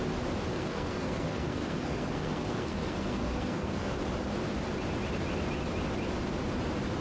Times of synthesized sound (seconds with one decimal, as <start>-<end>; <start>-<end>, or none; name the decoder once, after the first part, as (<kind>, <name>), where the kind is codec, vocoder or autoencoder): 0.5-4.0 (codec, SNAC)